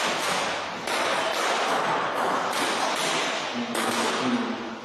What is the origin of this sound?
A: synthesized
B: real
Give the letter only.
B